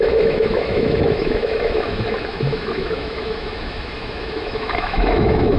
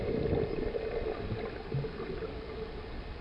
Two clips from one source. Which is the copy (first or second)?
first